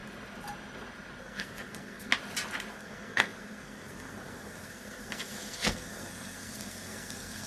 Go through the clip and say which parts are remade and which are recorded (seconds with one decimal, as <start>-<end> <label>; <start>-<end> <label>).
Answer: 0.0-1.2 recorded; 1.2-2.1 remade; 2.1-2.7 recorded; 2.7-7.5 remade